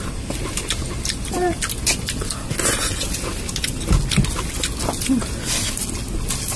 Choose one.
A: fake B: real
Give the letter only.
B